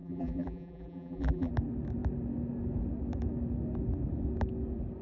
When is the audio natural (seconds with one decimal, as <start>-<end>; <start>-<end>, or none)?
1.5-5.0